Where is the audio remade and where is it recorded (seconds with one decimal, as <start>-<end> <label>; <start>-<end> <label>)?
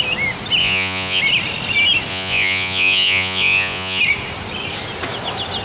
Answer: 0.0-0.6 recorded; 0.6-1.2 remade; 1.2-2.1 recorded; 2.1-4.0 remade; 4.0-5.6 recorded